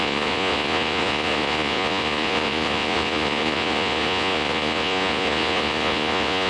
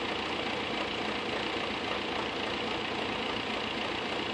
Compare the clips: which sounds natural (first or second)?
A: second